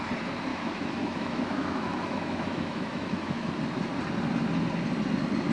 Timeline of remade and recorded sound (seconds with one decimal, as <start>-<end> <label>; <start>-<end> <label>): 0.0-0.5 recorded; 0.5-3.5 remade; 3.5-5.5 recorded

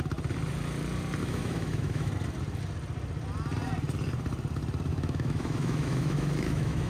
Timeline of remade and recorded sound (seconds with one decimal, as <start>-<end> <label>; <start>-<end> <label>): 0.0-1.2 recorded; 1.2-2.1 remade; 2.1-4.9 recorded; 4.9-6.9 remade